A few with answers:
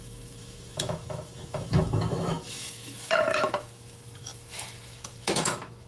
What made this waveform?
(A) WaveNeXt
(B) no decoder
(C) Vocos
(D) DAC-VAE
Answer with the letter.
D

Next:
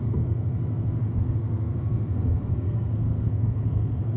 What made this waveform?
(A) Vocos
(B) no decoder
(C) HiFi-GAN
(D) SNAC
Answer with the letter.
D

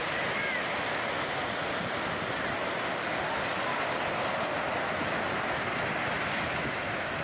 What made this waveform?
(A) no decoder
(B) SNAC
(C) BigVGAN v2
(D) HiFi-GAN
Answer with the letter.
A